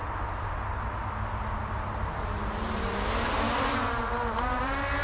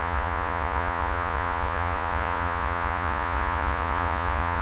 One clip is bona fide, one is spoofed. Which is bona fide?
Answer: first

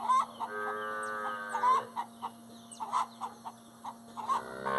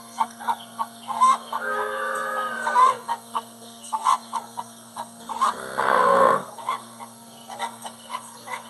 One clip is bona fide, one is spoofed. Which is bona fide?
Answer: first